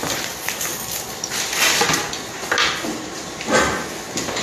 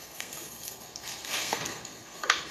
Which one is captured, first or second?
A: first